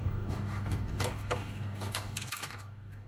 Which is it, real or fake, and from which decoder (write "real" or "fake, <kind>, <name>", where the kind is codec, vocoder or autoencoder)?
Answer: fake, codec, DAC